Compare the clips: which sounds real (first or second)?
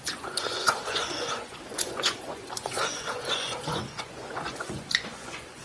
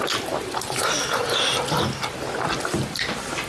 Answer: second